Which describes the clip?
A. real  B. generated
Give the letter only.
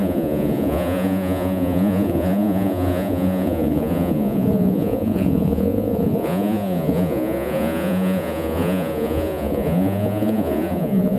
B